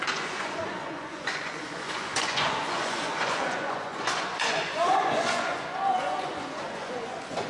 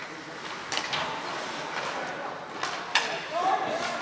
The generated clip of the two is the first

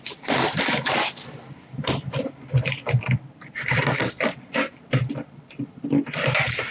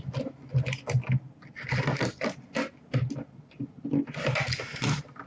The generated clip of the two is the first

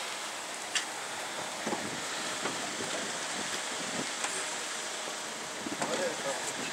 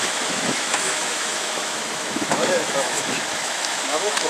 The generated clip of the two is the second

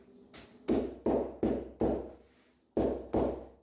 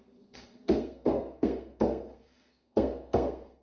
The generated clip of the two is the second